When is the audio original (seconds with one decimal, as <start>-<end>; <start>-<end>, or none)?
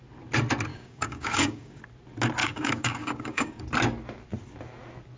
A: 0.0-0.7; 1.8-2.4; 3.6-5.2